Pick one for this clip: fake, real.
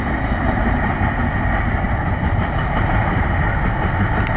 real